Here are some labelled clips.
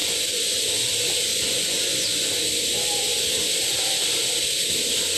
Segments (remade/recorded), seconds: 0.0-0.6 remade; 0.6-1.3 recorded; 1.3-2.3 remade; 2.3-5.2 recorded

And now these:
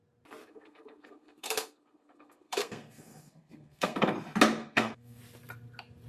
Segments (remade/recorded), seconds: 0.0-0.4 recorded; 0.4-4.1 remade; 4.1-4.6 recorded; 4.6-5.2 remade; 5.2-6.1 recorded

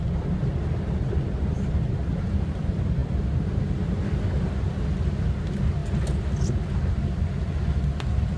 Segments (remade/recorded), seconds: 0.0-8.4 recorded

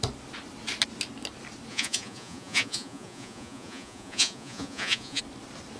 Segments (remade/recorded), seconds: 0.0-1.7 recorded; 1.7-5.2 remade; 5.2-5.8 recorded

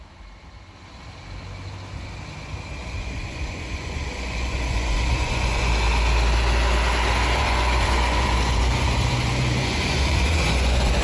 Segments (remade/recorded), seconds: 0.0-2.8 recorded; 2.8-5.7 remade; 5.7-7.4 recorded; 7.4-11.0 remade

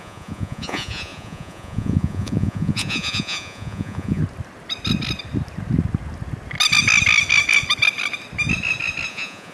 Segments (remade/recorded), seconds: 0.0-4.2 remade; 4.2-9.1 recorded; 9.1-9.5 remade